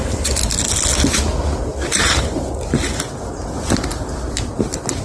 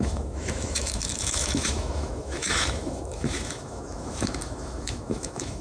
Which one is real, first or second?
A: first